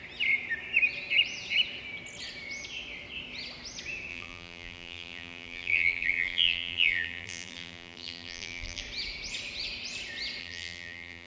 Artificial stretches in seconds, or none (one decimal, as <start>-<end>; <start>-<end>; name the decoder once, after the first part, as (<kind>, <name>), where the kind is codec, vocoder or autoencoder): 4.1-8.8 (vocoder, BigVGAN v2); 10.4-11.3